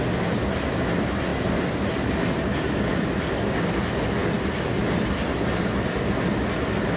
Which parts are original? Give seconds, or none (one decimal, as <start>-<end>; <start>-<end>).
0.0-1.3; 1.9-2.5; 3.6-7.0